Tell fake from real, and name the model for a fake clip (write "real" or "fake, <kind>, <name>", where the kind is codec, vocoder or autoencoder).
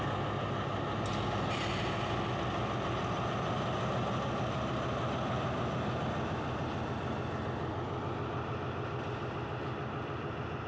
real